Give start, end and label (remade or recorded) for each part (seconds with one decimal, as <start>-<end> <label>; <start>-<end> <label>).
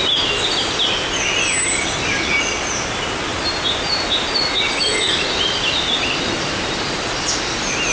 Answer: 0.0-7.9 recorded